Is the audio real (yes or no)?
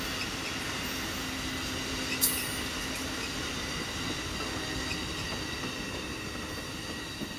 yes